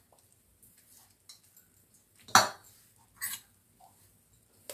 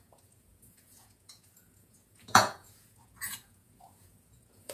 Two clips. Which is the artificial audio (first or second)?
second